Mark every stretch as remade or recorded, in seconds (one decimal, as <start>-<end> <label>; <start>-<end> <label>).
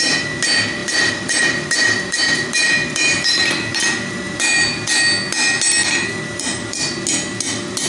0.0-0.8 recorded; 0.8-5.0 remade; 5.0-5.8 recorded; 5.8-6.9 remade; 6.9-7.9 recorded